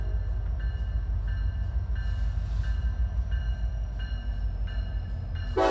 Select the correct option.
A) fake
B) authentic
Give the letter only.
B